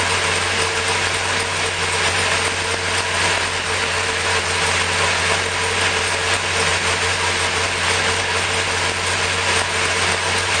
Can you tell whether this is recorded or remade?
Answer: recorded